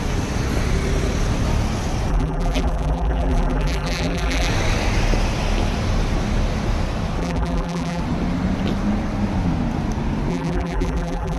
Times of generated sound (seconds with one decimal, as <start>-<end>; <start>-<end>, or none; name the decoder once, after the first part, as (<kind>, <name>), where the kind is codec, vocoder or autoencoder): 2.1-4.5 (vocoder, BigVGAN v2); 7.2-8.0; 10.3-11.4